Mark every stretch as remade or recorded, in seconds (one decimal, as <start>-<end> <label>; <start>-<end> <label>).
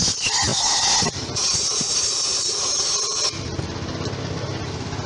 0.0-5.1 recorded